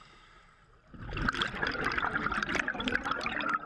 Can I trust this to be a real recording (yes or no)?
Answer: yes